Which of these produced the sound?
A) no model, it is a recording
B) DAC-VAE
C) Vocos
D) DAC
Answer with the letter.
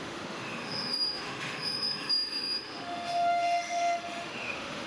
B